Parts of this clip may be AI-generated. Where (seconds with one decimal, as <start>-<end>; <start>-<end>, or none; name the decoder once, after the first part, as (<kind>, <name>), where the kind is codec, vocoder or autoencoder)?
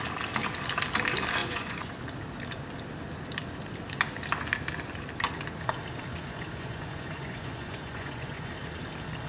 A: 1.4-2.0 (vocoder, Vocos); 6.1-8.5